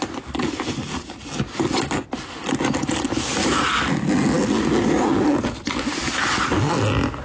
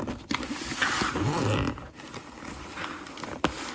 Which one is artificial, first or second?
second